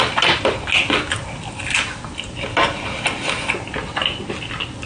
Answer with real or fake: real